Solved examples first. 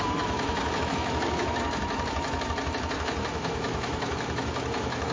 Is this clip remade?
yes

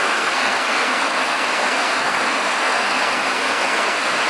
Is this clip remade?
yes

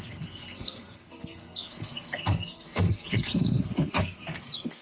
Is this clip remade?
yes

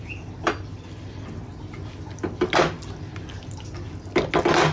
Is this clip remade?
no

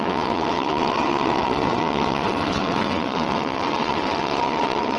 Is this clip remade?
yes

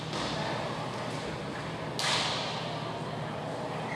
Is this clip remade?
no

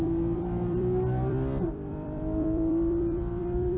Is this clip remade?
yes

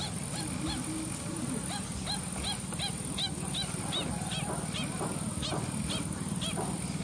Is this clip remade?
no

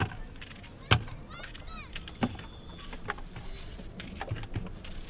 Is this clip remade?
no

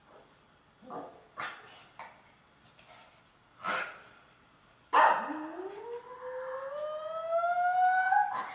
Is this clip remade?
no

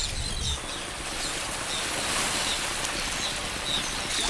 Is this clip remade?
no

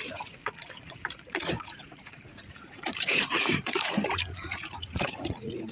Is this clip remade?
yes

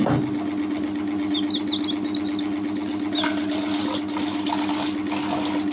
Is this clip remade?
no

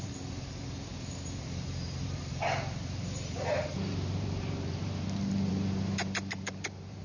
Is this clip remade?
yes